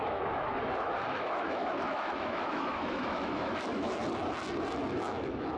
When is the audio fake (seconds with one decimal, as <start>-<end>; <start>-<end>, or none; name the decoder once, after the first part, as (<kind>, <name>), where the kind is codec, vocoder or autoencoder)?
0.0-4.0 (autoencoder, DAC-VAE); 5.0-5.6

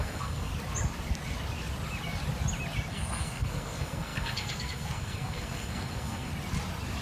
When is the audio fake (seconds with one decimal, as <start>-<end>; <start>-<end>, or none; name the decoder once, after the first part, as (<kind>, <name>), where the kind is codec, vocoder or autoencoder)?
0.0-0.5 (codec, SNAC); 2.9-6.3

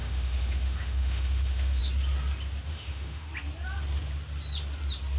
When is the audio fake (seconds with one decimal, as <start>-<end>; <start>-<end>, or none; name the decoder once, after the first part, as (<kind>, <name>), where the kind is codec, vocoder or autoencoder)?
0.0-1.8 (autoencoder, DAC-VAE); 2.7-3.3

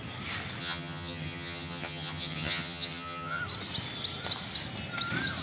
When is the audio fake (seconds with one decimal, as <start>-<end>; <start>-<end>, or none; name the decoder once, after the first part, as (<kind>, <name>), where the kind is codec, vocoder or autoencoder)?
0.6-3.4 (vocoder, HiFi-GAN)

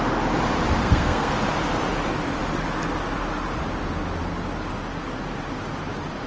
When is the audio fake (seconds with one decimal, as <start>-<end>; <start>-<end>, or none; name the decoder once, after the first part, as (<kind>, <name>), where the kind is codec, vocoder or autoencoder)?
0.8-1.3 (codec, SNAC)